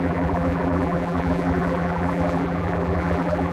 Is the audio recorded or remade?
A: remade